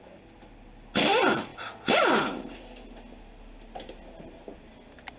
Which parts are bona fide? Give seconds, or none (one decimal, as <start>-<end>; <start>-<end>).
0.0-5.2